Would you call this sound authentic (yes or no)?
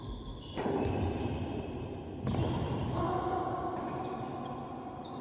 yes